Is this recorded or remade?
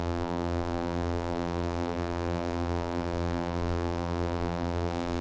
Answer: remade